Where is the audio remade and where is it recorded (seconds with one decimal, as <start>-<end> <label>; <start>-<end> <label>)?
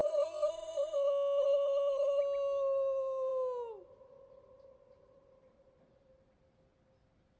0.0-2.2 remade; 2.2-7.4 recorded